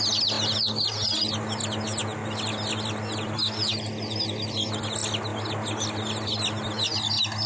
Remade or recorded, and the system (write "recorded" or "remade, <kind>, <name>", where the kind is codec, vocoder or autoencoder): recorded